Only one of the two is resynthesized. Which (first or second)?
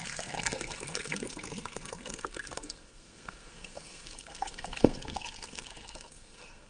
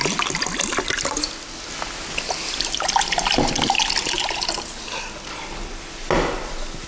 first